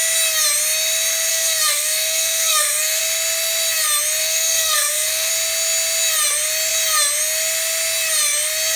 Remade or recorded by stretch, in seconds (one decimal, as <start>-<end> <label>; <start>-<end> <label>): 0.0-1.3 recorded; 1.3-3.0 remade; 3.0-4.2 recorded; 4.2-5.3 remade; 5.3-8.8 recorded